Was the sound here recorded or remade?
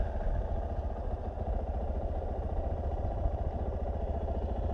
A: recorded